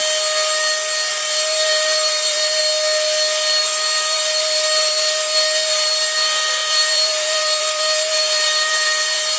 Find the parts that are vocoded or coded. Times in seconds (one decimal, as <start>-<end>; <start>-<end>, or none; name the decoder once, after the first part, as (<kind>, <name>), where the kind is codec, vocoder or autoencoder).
1.1-2.6 (vocoder, BigVGAN v2); 3.6-9.4